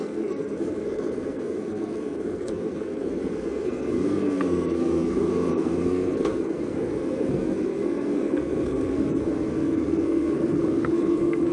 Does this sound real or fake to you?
fake